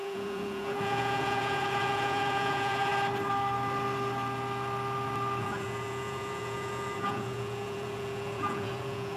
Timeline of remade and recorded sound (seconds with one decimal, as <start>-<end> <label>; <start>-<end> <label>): 0.0-2.9 remade; 2.9-5.4 recorded; 5.4-9.2 remade